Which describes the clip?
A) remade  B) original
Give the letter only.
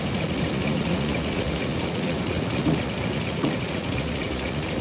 A